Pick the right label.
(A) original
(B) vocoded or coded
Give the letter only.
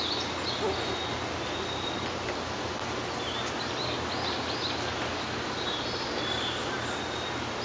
A